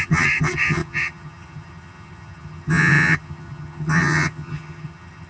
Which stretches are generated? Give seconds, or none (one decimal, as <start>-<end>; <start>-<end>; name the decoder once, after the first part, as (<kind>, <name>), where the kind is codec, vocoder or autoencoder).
0.0-5.3 (vocoder, HiFi-GAN)